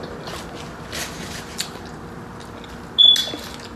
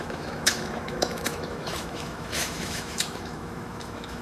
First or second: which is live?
first